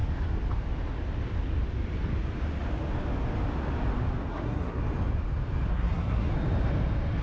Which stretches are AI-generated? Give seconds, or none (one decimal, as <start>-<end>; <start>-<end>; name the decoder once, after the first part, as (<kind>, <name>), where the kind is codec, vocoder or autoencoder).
4.3-4.8 (codec, SNAC); 5.7-6.3